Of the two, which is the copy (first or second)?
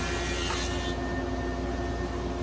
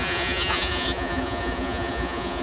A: second